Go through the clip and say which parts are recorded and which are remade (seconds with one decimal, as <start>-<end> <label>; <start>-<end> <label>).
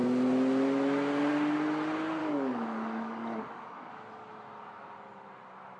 0.0-2.2 recorded; 2.2-3.9 remade; 3.9-5.8 recorded